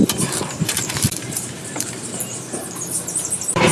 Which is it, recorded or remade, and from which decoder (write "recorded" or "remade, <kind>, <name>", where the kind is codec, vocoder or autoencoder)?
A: remade, vocoder, BigVGAN v2